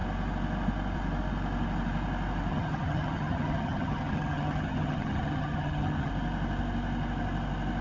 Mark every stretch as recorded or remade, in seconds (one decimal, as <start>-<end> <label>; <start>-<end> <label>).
0.0-2.5 recorded; 2.5-6.1 remade; 6.1-7.8 recorded